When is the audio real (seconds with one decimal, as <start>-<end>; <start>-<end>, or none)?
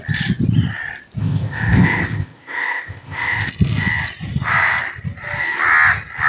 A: 0.0-1.2; 3.5-6.3